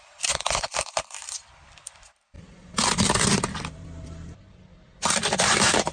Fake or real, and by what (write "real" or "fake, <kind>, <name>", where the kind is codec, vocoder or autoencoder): fake, vocoder, BigVGAN v2